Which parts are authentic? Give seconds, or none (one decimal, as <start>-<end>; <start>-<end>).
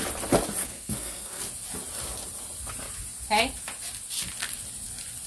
0.0-0.6; 1.4-5.3